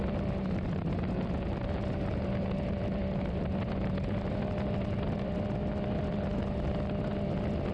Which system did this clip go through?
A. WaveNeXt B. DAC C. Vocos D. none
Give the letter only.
D